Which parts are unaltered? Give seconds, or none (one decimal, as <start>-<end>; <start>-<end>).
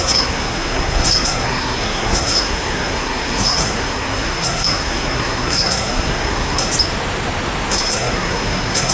6.7-7.7